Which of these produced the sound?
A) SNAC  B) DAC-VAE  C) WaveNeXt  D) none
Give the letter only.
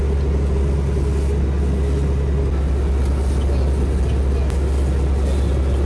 D